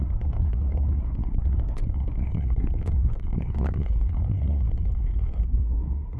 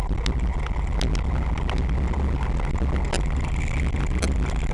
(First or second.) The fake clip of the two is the first